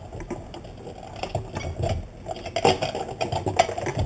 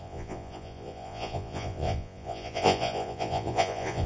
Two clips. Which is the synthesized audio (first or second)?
second